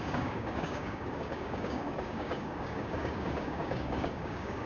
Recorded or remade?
remade